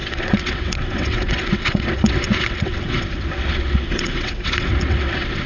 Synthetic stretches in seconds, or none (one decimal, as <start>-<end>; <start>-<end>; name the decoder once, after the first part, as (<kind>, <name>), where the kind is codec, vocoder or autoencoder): 0.0-5.5 (vocoder, WaveNeXt)